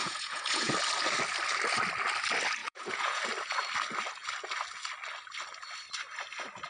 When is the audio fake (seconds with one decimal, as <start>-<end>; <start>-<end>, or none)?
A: 0.0-0.7; 2.6-3.2